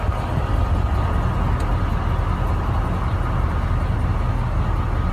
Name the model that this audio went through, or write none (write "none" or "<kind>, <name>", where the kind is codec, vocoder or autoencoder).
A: none